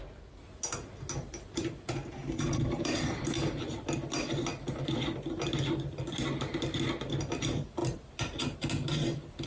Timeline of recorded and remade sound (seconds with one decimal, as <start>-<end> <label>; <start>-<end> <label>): 0.0-2.2 recorded; 2.2-3.7 remade; 3.7-9.5 recorded